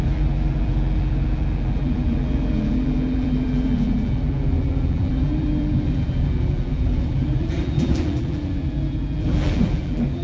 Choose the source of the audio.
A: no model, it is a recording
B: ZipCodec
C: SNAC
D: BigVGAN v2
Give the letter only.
D